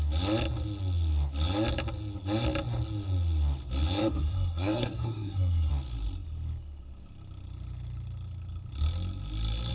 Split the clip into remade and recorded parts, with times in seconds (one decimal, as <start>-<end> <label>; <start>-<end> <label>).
0.0-4.0 recorded; 4.0-5.7 remade; 5.7-9.7 recorded